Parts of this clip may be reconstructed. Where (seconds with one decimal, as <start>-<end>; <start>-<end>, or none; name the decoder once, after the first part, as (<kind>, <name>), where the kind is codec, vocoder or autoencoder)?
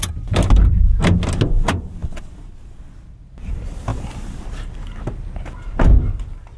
none